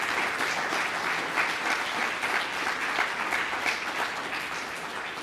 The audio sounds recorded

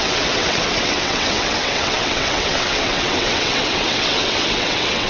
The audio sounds remade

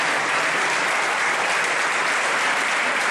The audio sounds remade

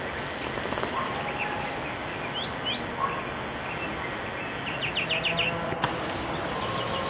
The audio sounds recorded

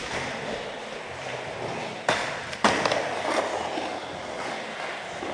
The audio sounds recorded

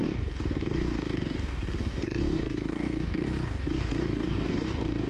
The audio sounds remade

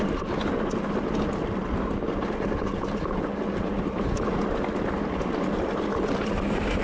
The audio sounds recorded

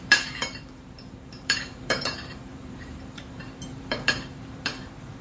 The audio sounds remade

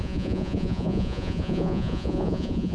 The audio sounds remade